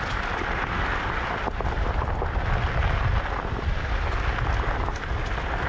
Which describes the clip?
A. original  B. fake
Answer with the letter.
A